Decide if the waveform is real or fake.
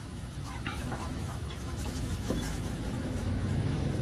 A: fake